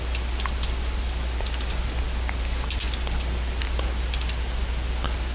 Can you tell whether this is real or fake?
real